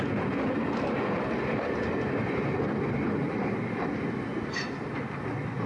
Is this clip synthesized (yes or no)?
no